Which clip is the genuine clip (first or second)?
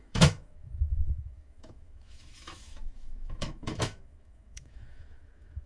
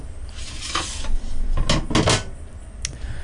second